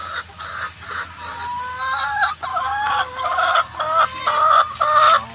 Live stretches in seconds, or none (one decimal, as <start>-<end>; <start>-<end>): 0.0-2.5; 3.6-5.3